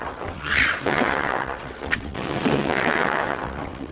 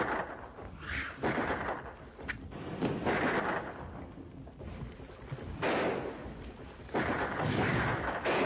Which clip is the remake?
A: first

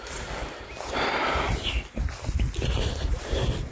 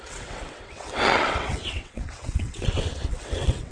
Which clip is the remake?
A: second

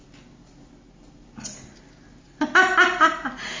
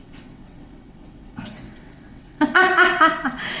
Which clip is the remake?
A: second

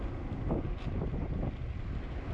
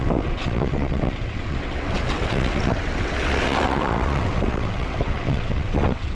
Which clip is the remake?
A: second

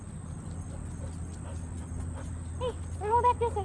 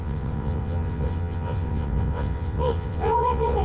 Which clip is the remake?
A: second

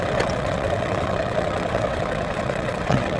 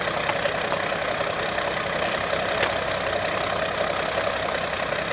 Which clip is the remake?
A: first